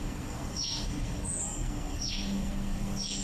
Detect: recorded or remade remade